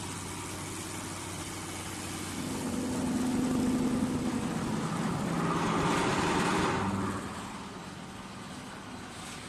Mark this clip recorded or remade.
recorded